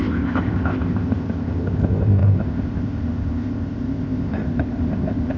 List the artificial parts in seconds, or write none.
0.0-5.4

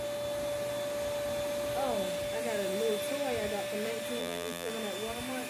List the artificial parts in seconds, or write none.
4.2-4.7